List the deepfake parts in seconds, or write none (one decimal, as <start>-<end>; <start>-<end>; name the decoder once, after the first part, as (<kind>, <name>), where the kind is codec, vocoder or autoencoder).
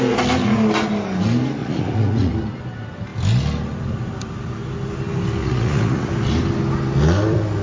1.6-2.3 (vocoder, Vocos); 5.4-6.1